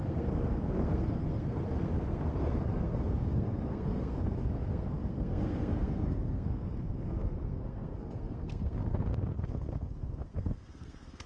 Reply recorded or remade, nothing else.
remade